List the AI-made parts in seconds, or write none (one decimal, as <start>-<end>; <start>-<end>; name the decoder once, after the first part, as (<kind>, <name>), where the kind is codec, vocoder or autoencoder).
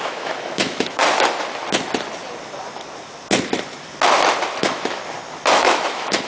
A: 0.0-1.0 (autoencoder, DAC-VAE); 4.6-5.0; 5.5-6.3